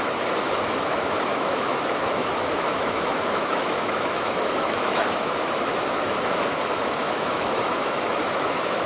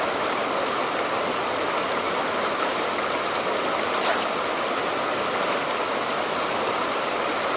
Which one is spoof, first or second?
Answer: first